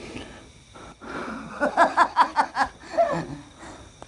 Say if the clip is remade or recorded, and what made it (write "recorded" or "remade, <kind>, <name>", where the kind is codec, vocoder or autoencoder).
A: recorded